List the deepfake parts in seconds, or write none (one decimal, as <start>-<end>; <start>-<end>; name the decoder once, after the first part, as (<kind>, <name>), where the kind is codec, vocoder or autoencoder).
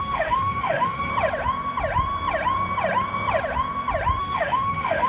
0.0-1.1 (autoencoder, DAC-VAE); 4.2-5.1